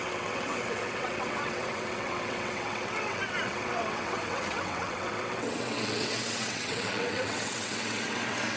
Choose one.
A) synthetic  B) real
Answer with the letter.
A